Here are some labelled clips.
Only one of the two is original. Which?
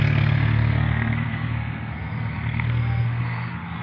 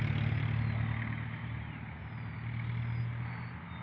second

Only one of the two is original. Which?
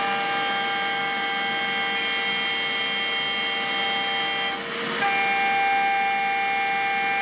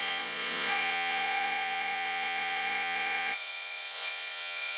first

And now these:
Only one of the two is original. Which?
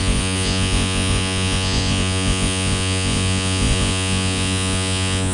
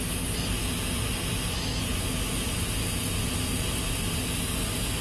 second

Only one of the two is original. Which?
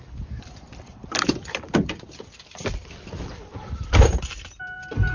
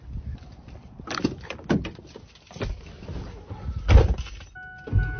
second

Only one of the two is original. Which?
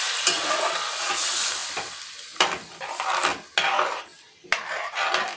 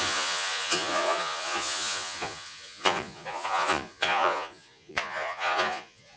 first